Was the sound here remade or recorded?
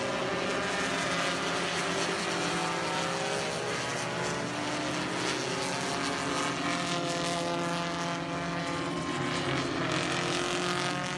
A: recorded